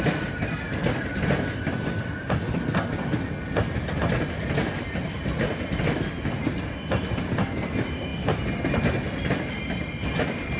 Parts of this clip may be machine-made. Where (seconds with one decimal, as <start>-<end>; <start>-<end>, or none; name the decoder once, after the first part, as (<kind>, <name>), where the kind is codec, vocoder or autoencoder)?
none